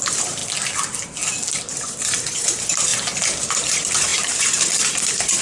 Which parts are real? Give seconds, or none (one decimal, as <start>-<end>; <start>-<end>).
0.4-1.7; 2.9-3.5